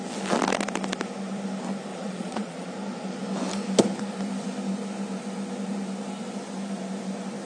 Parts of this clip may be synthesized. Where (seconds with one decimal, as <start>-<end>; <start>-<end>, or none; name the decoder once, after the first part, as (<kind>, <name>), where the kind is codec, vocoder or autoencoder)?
1.9-2.7 (vocoder, Vocos)